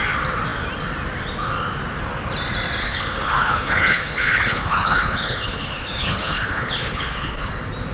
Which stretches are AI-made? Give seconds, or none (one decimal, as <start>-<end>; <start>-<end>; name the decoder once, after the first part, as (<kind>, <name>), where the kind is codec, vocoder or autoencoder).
2.8-7.5 (codec, HILCodec)